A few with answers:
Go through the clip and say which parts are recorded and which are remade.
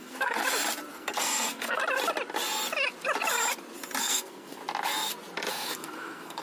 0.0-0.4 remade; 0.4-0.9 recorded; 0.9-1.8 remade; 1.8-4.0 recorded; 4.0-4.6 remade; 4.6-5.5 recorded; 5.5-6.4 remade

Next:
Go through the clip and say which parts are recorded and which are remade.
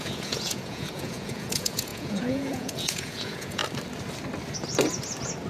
0.0-3.6 remade; 3.6-5.5 recorded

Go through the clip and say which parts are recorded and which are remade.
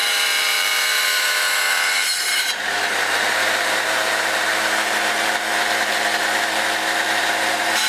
0.0-7.9 remade